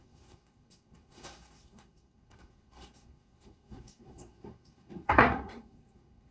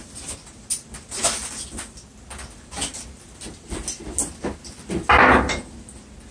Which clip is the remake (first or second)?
first